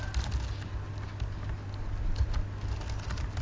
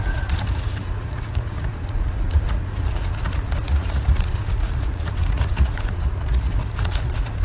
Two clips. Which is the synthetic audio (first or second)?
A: second